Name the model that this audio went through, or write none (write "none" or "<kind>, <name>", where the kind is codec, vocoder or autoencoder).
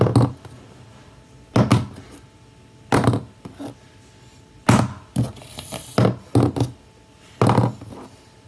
none